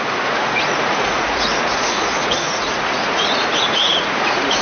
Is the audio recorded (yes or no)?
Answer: no